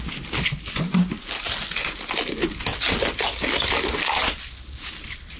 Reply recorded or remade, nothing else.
recorded